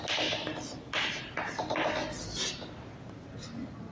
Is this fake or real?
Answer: real